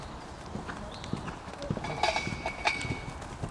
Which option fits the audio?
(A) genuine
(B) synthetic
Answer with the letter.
A